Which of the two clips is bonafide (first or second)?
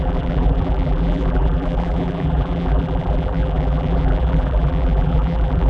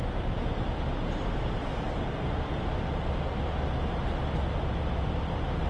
second